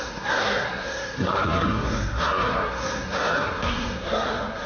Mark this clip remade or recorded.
remade